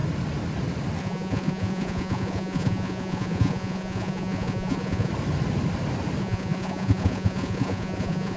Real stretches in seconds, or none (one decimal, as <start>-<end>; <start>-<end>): 0.0-1.0; 5.1-6.2

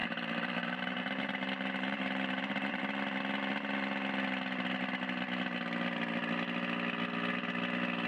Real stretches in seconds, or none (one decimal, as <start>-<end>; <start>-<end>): 2.8-8.1

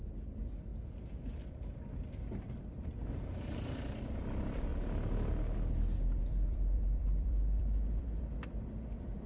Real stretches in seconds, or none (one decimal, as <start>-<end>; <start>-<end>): 0.7-4.2; 4.7-5.3

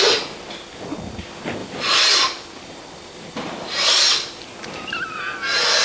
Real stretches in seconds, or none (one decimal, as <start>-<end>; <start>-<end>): 0.0-1.6; 4.0-5.8

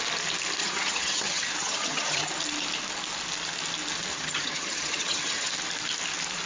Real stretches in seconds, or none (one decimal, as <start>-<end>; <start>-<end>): 0.0-0.6; 2.3-4.1; 5.5-6.5

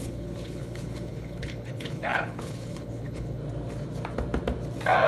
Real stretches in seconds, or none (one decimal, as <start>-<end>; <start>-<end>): 3.4-5.1

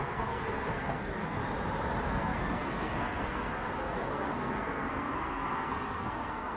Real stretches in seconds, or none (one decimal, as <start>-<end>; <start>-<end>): 1.4-2.1